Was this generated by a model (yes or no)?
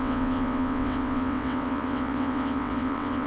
yes